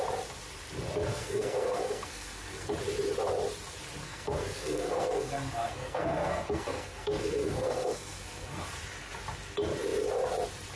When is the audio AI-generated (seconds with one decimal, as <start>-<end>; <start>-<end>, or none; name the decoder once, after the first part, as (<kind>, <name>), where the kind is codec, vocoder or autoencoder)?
1.1-2.7 (codec, SNAC); 4.0-8.6